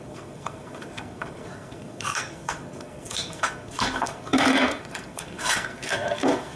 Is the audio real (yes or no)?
no